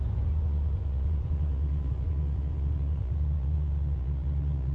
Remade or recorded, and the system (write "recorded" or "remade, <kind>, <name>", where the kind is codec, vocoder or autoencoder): remade, vocoder, Vocos